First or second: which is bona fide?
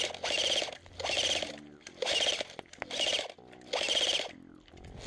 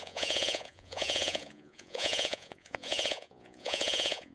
first